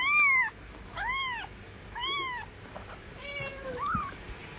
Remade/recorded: recorded